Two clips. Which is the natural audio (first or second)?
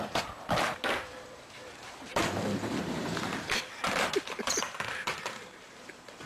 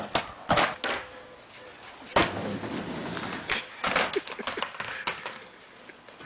second